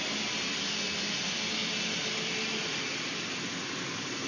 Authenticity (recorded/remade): recorded